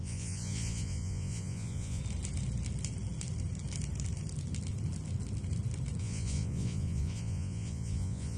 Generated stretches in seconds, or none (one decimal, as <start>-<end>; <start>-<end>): 0.0-2.0; 6.0-8.4